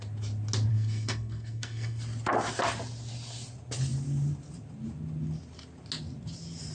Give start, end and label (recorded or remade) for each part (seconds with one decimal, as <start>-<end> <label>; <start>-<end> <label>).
0.0-0.7 recorded; 0.7-2.0 remade; 2.0-6.7 recorded